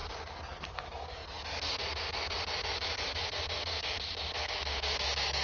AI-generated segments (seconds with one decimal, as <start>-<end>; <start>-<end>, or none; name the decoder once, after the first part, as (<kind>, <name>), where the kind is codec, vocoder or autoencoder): 0.7-1.2 (codec, DAC); 4.4-5.4